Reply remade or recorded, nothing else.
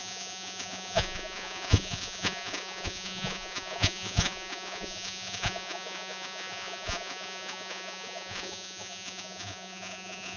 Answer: remade